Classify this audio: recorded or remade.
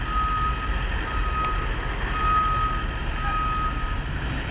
recorded